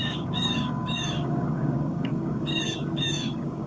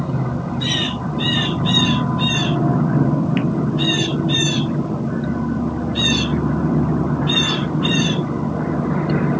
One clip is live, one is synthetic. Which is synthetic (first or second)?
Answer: first